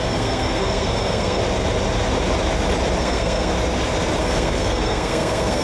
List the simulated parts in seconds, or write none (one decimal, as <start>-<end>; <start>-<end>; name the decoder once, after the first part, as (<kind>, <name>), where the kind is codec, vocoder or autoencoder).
0.0-1.4 (codec, SNAC); 3.0-3.5; 4.2-5.6